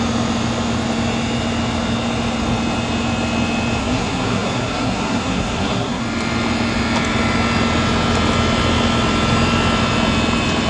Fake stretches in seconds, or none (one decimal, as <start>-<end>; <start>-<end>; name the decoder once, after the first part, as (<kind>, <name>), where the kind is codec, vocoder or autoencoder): 3.8-6.0 (codec, SNAC)